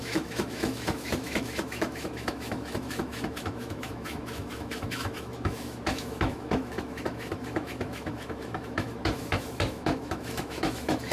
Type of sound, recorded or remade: remade